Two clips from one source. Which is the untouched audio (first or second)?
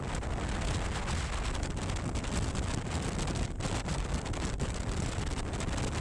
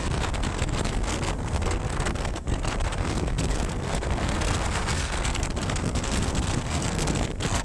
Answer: first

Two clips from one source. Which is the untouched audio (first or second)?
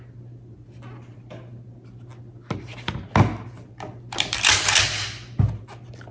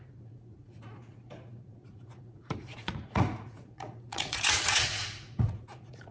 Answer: first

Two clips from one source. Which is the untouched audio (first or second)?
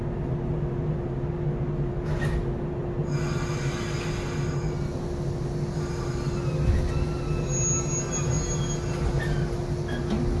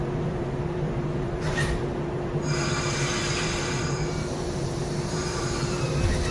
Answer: first